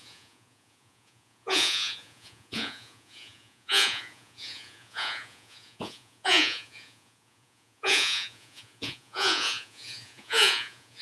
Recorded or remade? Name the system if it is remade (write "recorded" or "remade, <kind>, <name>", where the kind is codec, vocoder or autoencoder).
remade, vocoder, Vocos